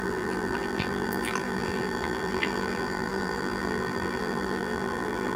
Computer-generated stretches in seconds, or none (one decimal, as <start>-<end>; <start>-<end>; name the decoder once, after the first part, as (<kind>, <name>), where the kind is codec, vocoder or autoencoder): 0.0-5.4 (vocoder, BigVGAN v2)